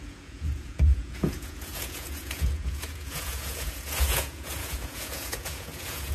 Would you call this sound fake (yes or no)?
yes